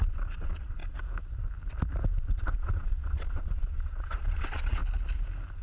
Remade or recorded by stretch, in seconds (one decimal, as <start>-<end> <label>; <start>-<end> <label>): 0.0-0.8 remade; 0.8-2.2 recorded; 2.2-4.8 remade; 4.8-5.6 recorded